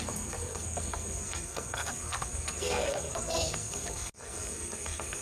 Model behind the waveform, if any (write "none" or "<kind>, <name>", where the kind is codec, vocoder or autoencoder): codec, SNAC